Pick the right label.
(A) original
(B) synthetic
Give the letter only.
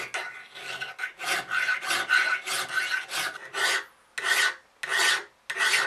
A